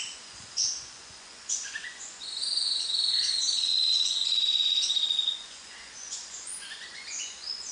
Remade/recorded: remade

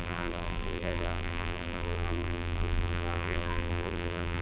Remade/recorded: remade